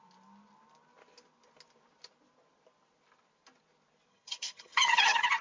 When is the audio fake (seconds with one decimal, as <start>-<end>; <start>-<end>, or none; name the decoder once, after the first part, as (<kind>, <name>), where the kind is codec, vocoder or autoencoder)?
4.1-5.4 (vocoder, HiFi-GAN)